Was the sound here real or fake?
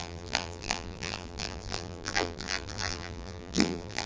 fake